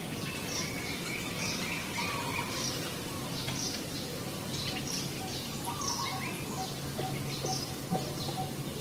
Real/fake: real